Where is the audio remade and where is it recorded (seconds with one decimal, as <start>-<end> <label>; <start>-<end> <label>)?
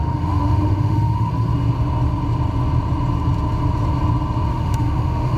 0.0-1.3 remade; 1.3-4.5 recorded; 4.5-5.4 remade